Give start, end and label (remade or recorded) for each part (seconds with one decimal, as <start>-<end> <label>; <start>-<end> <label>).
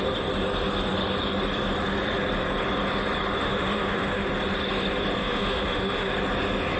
0.0-3.4 recorded; 3.4-4.3 remade; 4.3-5.2 recorded; 5.2-6.1 remade; 6.1-6.8 recorded